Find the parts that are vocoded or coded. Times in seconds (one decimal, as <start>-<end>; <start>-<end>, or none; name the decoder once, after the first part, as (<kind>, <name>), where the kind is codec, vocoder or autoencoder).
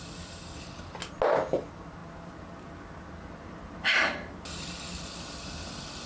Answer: none